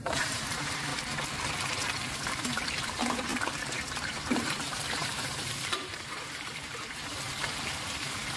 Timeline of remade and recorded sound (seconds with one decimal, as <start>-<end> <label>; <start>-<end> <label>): 0.0-0.9 remade; 0.9-2.1 recorded; 2.1-3.3 remade; 3.3-3.9 recorded; 3.9-8.4 remade